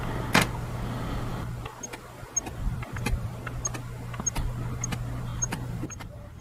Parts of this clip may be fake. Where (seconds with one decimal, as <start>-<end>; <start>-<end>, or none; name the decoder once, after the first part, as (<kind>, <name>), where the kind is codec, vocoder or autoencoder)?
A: 5.3-6.4 (vocoder, BigVGAN v2)